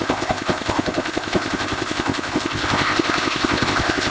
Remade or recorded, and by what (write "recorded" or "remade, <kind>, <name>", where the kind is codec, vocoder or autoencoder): remade, codec, ZipCodec